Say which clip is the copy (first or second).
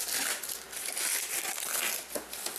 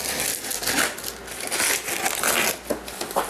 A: first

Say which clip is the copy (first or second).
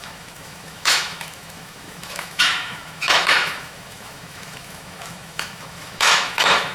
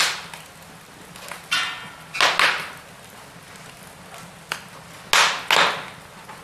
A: first